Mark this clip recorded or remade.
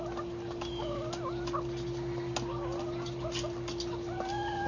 recorded